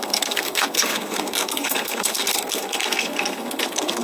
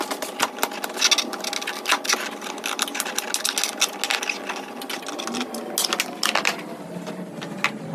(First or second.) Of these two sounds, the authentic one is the second